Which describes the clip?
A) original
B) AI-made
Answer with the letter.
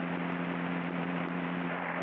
A